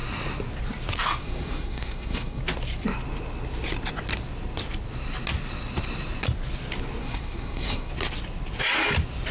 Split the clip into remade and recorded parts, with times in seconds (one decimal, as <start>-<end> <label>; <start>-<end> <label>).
0.0-1.2 recorded; 1.2-2.4 remade; 2.4-7.0 recorded; 7.0-7.9 remade; 7.9-9.3 recorded